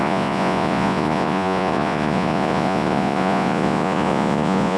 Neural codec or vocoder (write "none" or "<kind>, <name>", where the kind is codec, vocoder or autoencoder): vocoder, Vocos